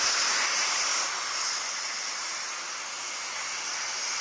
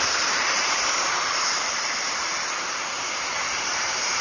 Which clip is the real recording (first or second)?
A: first